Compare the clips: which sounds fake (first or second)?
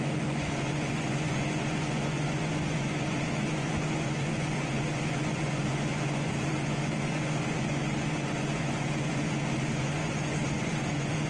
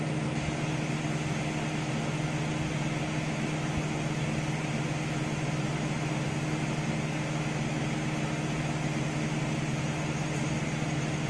first